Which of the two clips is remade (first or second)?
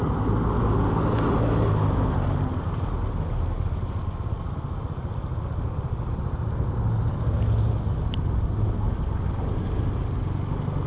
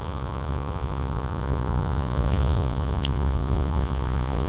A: second